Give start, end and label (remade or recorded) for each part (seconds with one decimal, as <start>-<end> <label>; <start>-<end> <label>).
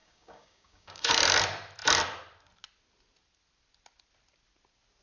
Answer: 0.0-1.1 remade; 1.1-5.0 recorded